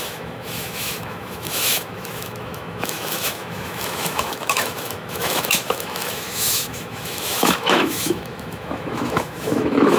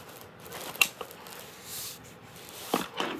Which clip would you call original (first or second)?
second